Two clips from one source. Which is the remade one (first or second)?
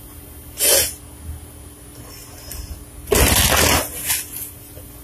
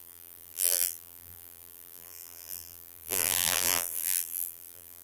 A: second